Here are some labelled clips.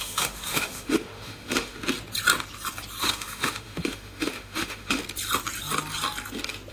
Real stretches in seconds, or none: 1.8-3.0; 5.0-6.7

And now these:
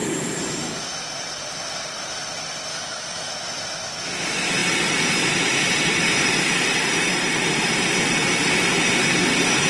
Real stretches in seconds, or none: 0.0-2.7; 3.3-9.7

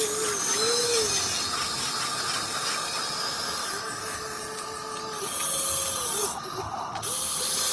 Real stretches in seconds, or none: 0.0-0.5; 1.1-3.6; 4.4-7.7

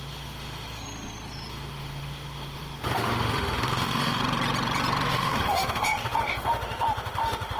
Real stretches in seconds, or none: 0.8-1.5; 4.2-5.1

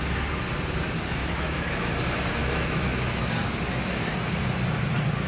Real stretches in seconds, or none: 0.0-1.2; 1.9-2.4; 3.2-5.3

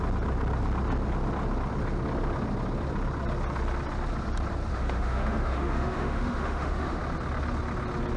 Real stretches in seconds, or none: 0.0-4.7; 7.0-8.2

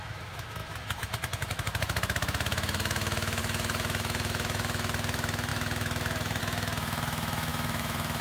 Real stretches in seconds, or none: none